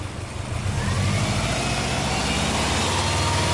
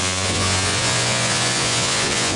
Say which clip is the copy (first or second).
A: second